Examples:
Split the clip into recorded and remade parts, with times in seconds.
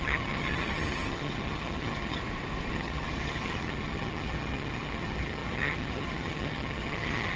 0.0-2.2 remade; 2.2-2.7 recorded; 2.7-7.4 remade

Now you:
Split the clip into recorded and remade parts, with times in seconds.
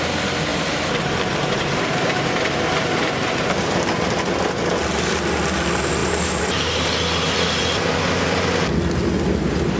0.0-0.5 recorded; 0.5-4.2 remade; 4.2-6.0 recorded; 6.0-6.9 remade; 6.9-9.8 recorded